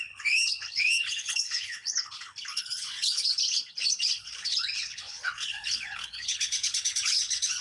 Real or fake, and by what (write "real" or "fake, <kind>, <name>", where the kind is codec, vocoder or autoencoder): fake, codec, HILCodec